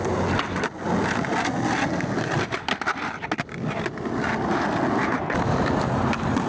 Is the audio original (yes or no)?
yes